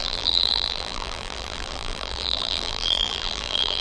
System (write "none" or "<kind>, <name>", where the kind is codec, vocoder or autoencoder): vocoder, BigVGAN v2